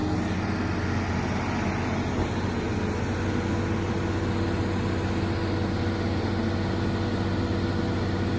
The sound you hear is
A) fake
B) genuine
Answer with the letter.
B